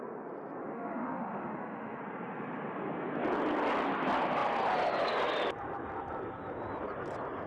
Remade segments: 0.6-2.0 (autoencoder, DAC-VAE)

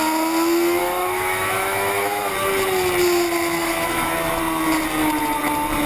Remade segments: 0.8-2.3 (autoencoder, DAC-VAE); 3.6-4.1

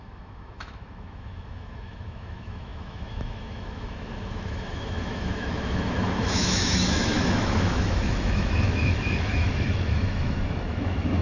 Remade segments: 0.0-11.2 (autoencoder, DAC-VAE)